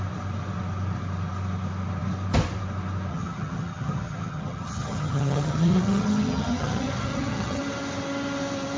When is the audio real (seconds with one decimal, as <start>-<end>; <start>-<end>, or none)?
0.0-3.1; 7.6-8.8